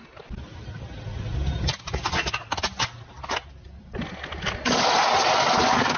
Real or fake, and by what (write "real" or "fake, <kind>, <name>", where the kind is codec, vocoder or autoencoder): real